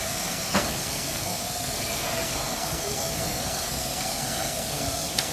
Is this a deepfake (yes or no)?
yes